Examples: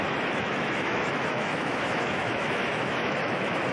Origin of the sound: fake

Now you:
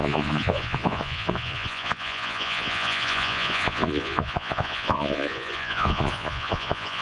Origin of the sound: fake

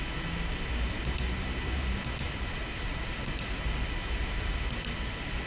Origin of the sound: real